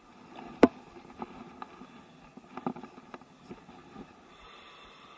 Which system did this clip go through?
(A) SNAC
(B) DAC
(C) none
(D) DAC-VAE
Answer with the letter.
C